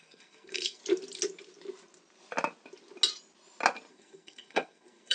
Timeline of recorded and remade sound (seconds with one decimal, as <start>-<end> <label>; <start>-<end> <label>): 0.0-0.8 remade; 0.8-3.9 recorded; 3.9-5.1 remade